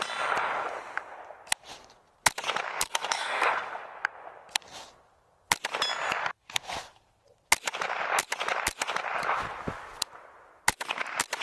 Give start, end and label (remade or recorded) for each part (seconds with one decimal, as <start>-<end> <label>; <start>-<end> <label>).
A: 0.0-2.7 recorded; 2.7-3.5 remade; 3.5-11.4 recorded